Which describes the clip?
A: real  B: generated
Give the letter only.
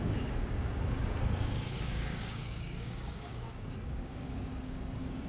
B